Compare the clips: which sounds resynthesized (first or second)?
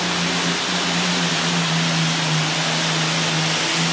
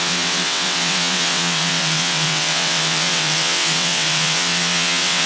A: second